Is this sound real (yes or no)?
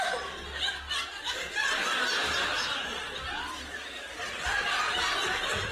yes